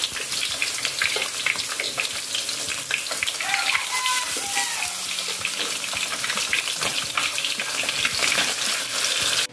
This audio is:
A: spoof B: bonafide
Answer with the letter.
B